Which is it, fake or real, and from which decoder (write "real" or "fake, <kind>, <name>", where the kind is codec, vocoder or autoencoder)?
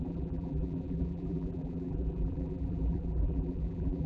fake, vocoder, BigVGAN v2